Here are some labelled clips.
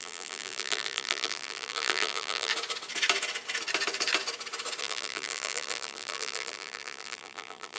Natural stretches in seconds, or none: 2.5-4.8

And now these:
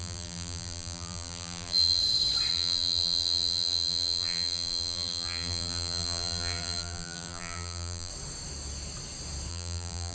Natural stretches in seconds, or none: 2.0-2.5; 8.1-9.5

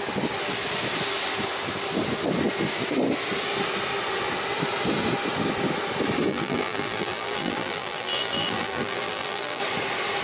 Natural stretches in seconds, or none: 0.0-6.3; 9.6-10.2

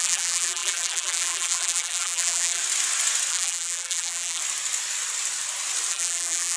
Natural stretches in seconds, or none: 2.6-3.3; 4.4-5.9

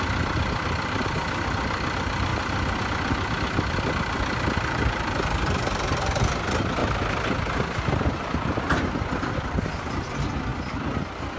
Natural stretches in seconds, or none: 2.3-4.5; 10.5-11.4

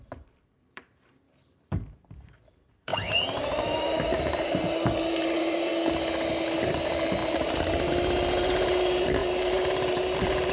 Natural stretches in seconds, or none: 5.7-6.8

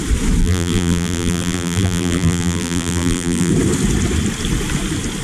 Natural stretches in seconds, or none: 0.0-0.4; 3.5-5.2